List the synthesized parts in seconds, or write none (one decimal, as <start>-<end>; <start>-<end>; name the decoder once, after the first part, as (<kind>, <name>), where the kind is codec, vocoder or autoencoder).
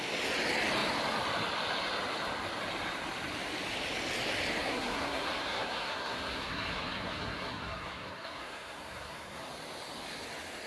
4.6-9.5 (codec, SNAC)